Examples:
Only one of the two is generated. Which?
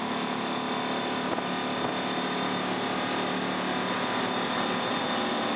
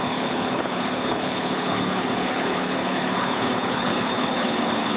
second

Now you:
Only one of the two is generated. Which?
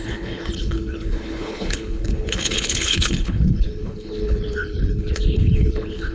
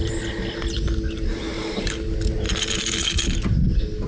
first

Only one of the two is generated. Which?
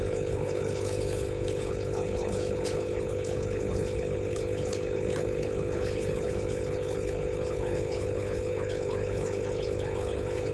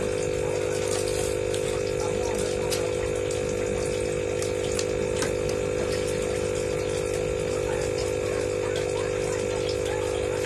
first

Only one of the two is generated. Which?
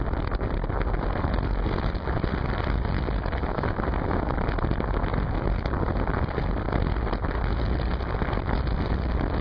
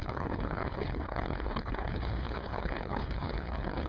second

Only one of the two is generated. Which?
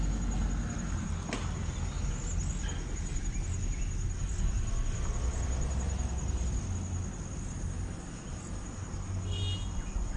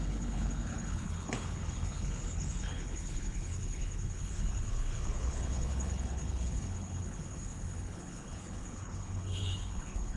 second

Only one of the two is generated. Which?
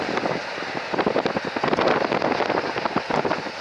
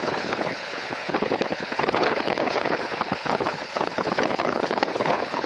second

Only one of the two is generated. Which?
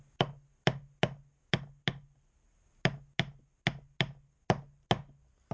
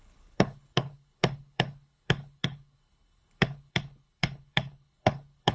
second